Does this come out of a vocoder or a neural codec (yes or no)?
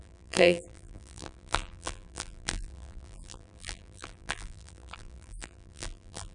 yes